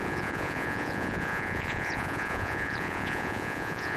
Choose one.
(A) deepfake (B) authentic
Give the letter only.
A